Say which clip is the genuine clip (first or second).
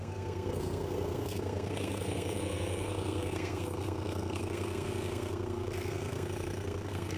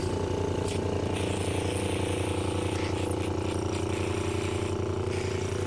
second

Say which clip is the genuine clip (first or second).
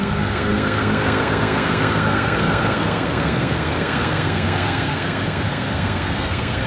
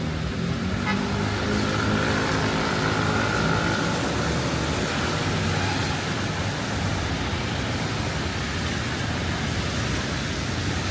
second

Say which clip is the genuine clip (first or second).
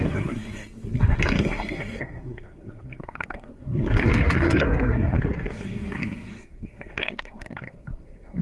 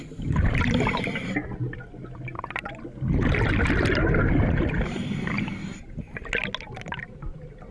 second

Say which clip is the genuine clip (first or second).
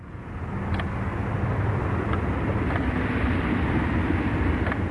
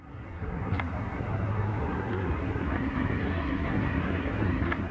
first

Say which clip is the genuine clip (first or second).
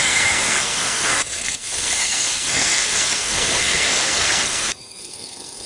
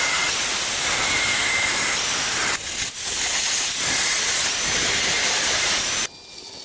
second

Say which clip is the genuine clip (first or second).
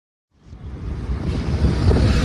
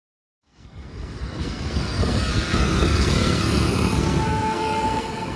first